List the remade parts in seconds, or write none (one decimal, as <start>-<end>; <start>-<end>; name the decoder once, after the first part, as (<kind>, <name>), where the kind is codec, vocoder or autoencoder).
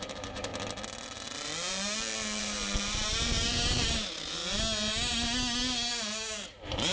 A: 0.0-0.5 (vocoder, BigVGAN v2); 2.4-4.4; 5.9-6.9